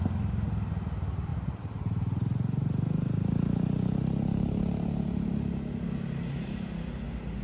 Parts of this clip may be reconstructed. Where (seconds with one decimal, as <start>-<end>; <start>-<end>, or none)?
1.3-5.0